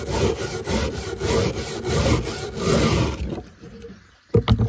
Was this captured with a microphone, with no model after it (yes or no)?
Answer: yes